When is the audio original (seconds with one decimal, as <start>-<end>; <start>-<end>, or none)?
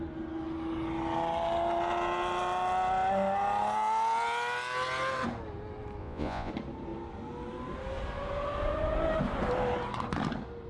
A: 0.0-6.0; 6.5-10.7